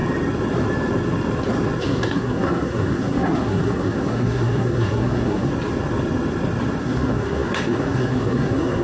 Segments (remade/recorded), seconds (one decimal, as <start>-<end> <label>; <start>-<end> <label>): 0.0-1.8 recorded; 1.8-5.5 remade; 5.5-6.8 recorded; 6.8-8.8 remade